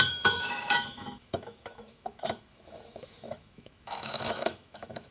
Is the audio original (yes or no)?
no